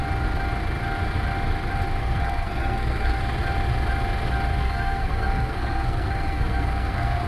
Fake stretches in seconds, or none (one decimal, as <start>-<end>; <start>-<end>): 2.0-3.2; 4.6-7.3